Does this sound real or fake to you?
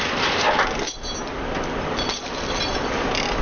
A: real